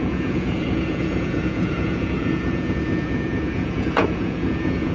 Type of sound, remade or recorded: remade